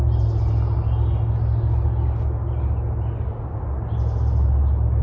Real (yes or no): yes